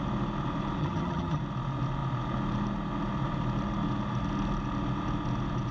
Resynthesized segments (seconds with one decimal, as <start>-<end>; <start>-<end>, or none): 0.8-1.4